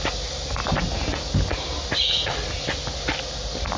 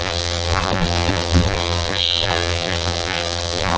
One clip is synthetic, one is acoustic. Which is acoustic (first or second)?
first